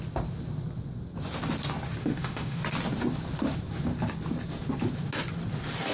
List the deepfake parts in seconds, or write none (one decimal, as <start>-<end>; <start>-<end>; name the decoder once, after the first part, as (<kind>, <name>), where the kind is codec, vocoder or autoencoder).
2.0-2.6 (autoencoder, DAC-VAE)